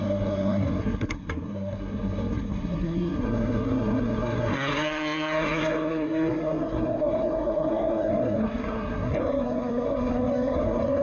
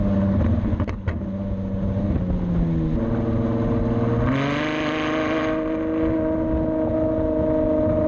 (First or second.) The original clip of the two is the second